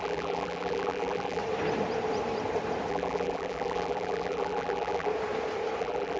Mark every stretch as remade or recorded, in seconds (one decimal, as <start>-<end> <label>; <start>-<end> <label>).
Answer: 0.0-1.4 remade; 1.4-2.9 recorded; 2.9-5.1 remade; 5.1-5.8 recorded; 5.8-6.2 remade